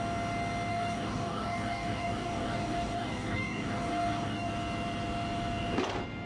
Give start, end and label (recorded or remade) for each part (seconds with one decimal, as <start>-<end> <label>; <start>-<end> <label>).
0.0-0.7 recorded; 0.7-4.5 remade; 4.5-6.3 recorded